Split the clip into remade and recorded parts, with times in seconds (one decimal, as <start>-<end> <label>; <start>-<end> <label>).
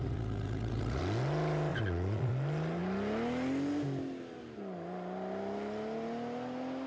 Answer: 0.0-1.0 remade; 1.0-1.7 recorded; 1.7-2.3 remade; 2.3-6.9 recorded